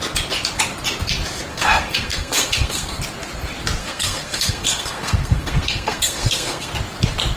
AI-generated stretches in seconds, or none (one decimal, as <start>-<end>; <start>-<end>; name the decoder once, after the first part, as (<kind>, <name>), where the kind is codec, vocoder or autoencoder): 1.5-3.0 (codec, SNAC); 3.8-6.7